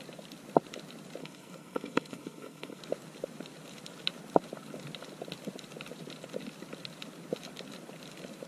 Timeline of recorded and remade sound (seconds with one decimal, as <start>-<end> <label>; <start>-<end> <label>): 0.0-1.2 recorded; 1.2-2.8 remade; 2.8-8.5 recorded